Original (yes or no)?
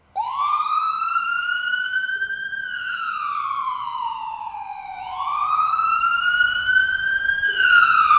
no